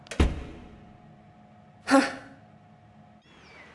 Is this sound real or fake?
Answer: real